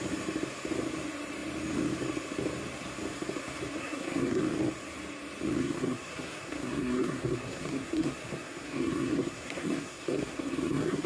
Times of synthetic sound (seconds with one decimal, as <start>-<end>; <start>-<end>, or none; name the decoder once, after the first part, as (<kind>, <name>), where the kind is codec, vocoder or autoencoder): 3.8-4.4 (codec, SNAC); 5.6-11.1